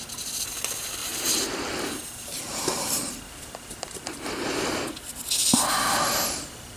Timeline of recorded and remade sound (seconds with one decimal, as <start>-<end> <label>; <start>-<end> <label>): 0.0-1.0 recorded; 1.0-3.4 remade; 3.4-6.8 recorded